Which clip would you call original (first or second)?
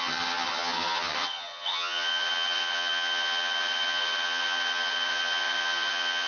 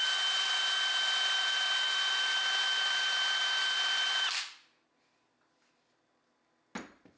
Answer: second